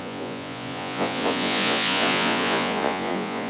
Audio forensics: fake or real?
fake